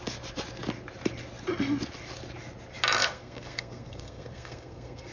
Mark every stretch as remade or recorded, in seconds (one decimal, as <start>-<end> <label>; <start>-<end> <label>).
0.0-3.0 recorded; 3.0-5.1 remade